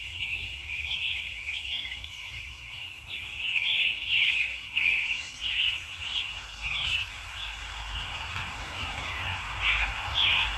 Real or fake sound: fake